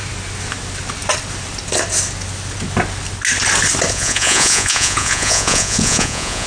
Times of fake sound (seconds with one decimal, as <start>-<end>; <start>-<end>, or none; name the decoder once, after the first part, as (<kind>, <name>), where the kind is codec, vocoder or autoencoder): 3.9-6.5 (vocoder, Vocos)